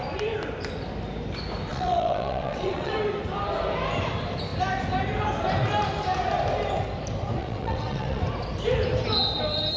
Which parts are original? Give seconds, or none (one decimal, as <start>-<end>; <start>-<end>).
0.0-1.7; 2.9-7.4; 8.2-9.8